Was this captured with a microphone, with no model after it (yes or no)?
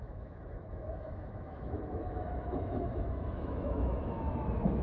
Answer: no